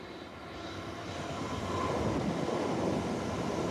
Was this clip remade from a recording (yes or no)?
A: no